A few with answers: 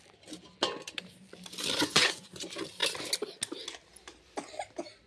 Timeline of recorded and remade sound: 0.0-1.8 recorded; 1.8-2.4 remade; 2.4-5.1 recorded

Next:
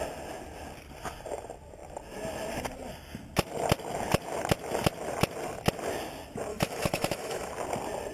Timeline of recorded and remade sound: 0.0-6.5 recorded; 6.5-7.5 remade; 7.5-8.1 recorded

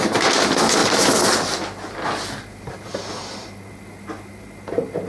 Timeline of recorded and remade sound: 0.0-5.1 recorded

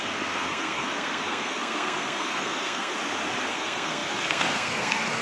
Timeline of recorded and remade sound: 0.0-2.9 remade; 2.9-3.5 recorded; 3.5-5.2 remade